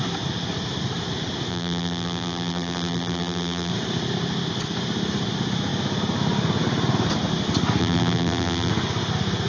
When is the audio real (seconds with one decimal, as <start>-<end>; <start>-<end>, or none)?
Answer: 0.0-1.5; 3.7-7.8; 8.7-9.5

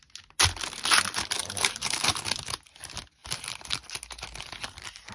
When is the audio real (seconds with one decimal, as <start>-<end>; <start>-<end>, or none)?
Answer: 0.0-1.4; 2.1-5.1

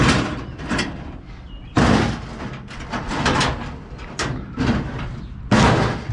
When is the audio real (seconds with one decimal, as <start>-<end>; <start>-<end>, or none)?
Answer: 0.0-0.5; 1.8-6.1

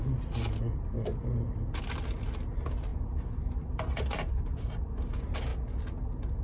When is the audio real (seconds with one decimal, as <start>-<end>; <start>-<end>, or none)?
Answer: 0.0-2.9; 4.9-6.4

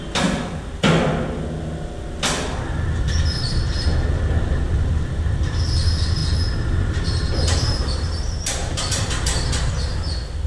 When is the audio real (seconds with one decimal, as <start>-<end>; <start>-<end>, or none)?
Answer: 0.0-6.2; 9.1-10.5

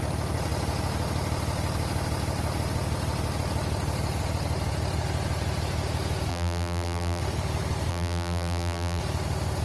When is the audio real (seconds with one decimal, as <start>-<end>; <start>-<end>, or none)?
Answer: 0.0-6.3; 7.2-7.9; 9.0-9.6